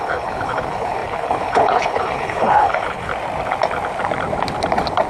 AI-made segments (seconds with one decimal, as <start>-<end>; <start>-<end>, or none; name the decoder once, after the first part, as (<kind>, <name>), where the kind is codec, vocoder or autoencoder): 0.0-3.1 (codec, HILCodec)